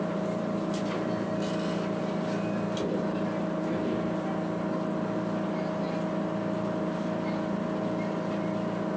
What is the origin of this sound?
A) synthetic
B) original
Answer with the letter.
B